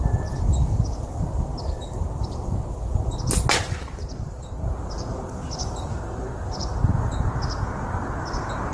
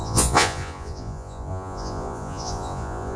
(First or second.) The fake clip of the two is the second